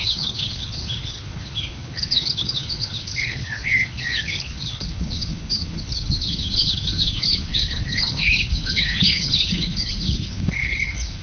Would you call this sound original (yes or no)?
no